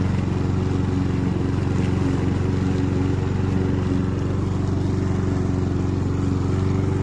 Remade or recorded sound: recorded